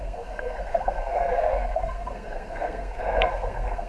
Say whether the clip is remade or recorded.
remade